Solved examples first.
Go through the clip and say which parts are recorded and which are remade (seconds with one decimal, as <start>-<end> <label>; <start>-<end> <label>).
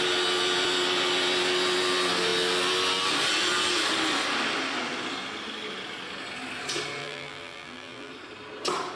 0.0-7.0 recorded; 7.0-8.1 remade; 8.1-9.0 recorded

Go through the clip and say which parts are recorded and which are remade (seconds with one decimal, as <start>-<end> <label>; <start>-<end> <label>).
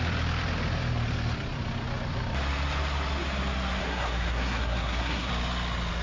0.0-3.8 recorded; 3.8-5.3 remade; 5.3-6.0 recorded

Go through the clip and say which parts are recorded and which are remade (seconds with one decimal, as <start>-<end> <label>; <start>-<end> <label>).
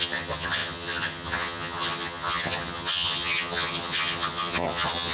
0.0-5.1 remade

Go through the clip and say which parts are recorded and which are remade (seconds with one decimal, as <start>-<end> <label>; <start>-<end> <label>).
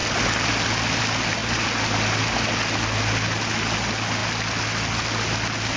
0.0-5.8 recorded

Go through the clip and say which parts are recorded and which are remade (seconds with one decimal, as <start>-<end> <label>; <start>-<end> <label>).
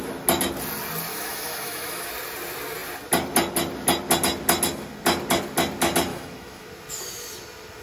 0.0-1.1 recorded; 1.1-2.1 remade; 2.1-6.1 recorded; 6.1-6.7 remade; 6.7-7.8 recorded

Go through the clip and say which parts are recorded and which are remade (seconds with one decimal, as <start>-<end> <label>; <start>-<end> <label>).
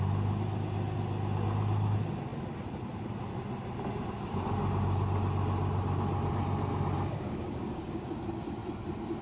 0.0-7.1 recorded; 7.1-8.1 remade; 8.1-9.2 recorded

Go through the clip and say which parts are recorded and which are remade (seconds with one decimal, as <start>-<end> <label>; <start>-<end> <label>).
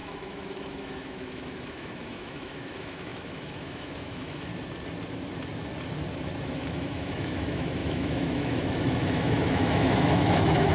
0.0-4.5 remade; 4.5-6.4 recorded; 6.4-10.7 remade